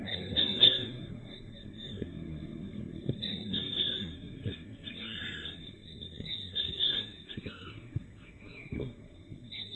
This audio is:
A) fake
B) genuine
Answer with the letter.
A